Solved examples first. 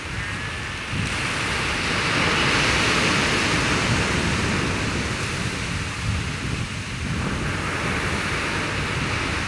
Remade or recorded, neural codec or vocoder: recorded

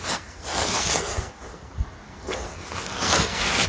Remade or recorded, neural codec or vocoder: remade, codec, SNAC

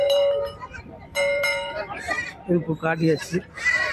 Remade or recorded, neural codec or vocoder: remade, vocoder, BigVGAN v2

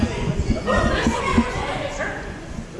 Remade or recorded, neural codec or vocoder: remade, vocoder, Vocos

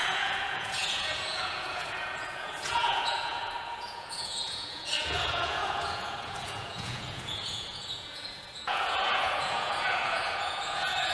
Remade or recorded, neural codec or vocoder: remade, vocoder, Vocos